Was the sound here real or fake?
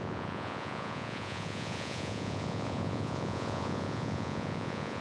fake